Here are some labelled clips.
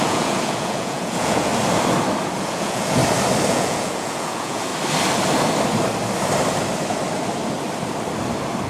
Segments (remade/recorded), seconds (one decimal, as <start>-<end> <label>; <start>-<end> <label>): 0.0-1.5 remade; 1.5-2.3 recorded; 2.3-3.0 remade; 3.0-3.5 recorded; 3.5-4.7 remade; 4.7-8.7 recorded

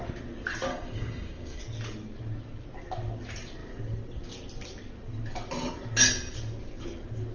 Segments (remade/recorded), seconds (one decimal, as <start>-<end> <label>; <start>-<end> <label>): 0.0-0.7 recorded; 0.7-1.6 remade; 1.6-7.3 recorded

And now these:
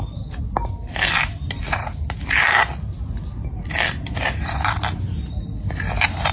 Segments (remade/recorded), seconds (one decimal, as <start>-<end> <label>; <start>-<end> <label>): 0.0-6.3 recorded

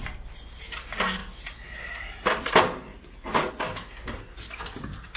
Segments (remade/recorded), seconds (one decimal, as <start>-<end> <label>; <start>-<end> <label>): 0.0-2.9 recorded; 2.9-3.5 remade; 3.5-5.2 recorded